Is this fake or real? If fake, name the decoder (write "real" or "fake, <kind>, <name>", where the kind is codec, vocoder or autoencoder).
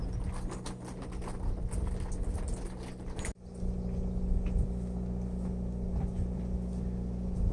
real